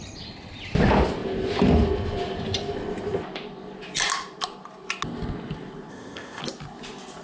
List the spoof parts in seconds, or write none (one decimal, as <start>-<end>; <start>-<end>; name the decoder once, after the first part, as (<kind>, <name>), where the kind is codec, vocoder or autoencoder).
5.9-6.4 (codec, ZipCodec)